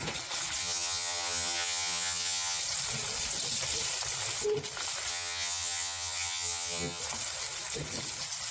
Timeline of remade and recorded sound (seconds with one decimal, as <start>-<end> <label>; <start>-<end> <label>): 0.0-0.6 recorded; 0.6-2.6 remade; 2.6-5.1 recorded; 5.1-7.0 remade; 7.0-8.5 recorded